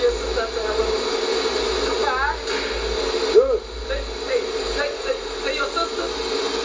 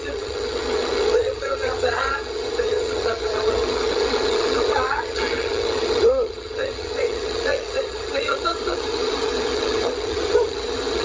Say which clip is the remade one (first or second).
second